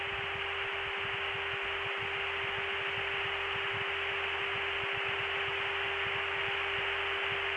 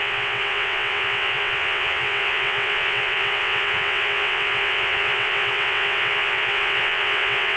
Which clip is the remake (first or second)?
second